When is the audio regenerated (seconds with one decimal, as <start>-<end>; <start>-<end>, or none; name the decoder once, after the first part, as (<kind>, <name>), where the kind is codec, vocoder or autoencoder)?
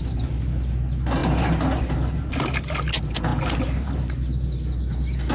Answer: none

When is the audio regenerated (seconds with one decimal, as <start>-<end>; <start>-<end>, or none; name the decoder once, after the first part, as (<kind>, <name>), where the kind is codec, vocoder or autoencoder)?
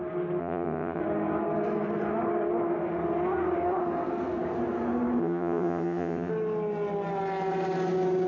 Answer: 0.4-1.0 (vocoder, HiFi-GAN); 5.2-6.3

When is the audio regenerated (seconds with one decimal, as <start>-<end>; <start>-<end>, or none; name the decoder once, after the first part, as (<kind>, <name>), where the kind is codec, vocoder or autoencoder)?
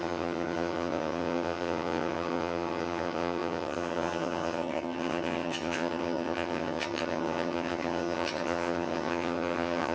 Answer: 0.0-9.9 (vocoder, HiFi-GAN)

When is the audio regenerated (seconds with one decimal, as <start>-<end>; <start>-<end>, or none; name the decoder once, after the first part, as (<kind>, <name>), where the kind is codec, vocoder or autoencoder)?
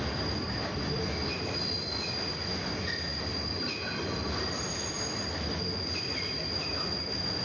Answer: none